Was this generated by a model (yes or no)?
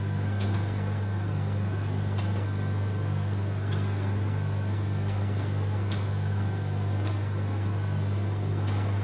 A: yes